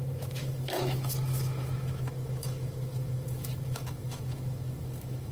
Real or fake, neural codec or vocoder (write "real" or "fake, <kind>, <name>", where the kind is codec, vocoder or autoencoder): fake, autoencoder, DAC-VAE